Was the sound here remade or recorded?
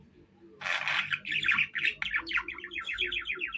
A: recorded